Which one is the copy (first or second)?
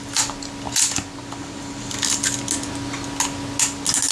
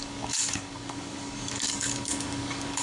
second